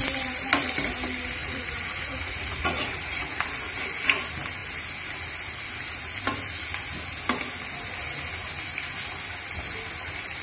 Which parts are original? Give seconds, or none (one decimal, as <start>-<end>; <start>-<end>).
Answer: 0.0-1.4; 3.4-10.4